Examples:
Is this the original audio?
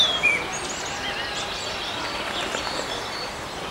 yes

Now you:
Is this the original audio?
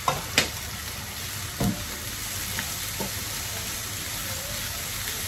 yes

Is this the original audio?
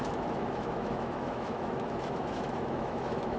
no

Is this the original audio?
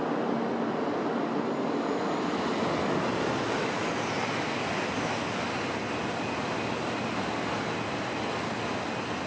yes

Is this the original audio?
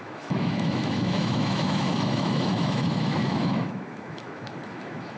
no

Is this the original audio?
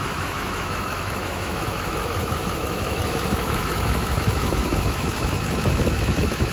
no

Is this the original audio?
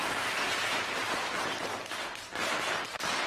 yes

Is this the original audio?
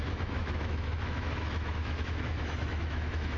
no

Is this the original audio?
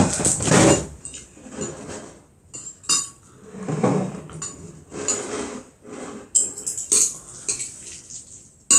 yes